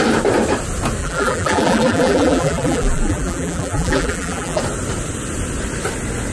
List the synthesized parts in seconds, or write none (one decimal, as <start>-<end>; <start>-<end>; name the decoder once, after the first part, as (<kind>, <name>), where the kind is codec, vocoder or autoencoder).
1.0-4.6 (vocoder, BigVGAN v2)